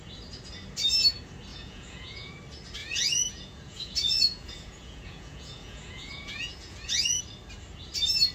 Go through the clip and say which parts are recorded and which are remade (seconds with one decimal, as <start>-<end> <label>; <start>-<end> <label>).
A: 0.0-1.5 recorded; 1.5-2.3 remade; 2.3-2.8 recorded; 2.8-7.2 remade; 7.2-8.3 recorded